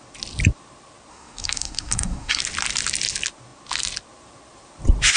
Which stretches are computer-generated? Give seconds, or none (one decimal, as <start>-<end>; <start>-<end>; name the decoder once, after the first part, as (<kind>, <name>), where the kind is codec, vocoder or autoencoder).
1.1-2.4 (codec, SNAC)